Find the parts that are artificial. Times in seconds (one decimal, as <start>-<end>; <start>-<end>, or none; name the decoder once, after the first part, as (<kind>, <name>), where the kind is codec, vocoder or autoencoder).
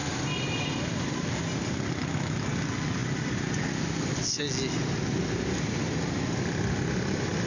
none